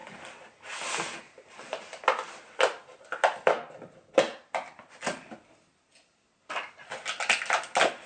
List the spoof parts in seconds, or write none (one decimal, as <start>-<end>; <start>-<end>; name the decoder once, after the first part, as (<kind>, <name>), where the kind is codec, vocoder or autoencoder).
none